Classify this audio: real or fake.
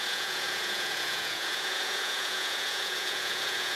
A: fake